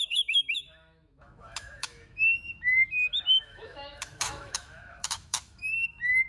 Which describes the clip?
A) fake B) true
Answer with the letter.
A